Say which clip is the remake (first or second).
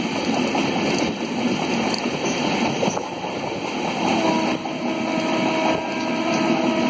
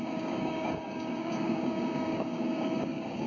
second